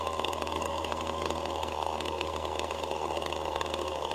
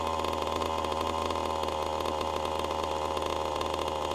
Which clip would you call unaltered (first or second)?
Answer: second